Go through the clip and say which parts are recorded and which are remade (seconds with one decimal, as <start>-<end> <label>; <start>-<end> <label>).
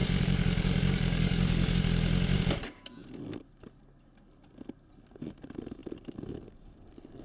0.0-1.8 remade; 1.8-7.2 recorded